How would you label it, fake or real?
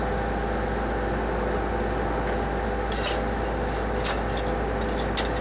real